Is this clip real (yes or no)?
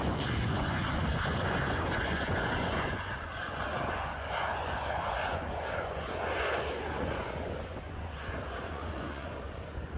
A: no